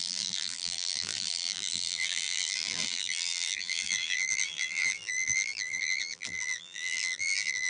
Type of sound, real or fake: fake